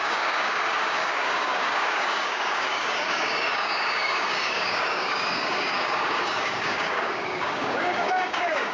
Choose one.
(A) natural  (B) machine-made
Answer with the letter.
B